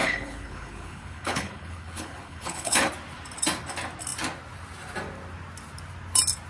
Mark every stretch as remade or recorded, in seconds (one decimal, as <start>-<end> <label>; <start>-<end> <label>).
0.0-2.9 remade; 2.9-6.5 recorded